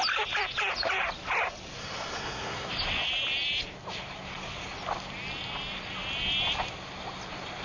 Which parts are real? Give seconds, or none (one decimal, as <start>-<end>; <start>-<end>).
0.0-1.8; 2.7-7.6